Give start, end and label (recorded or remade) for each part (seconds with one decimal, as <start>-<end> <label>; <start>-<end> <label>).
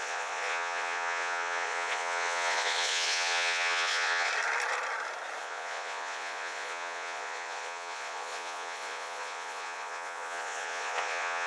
0.0-4.3 remade; 4.3-5.4 recorded; 5.4-11.5 remade